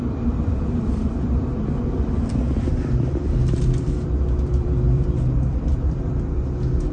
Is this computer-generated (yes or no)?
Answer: yes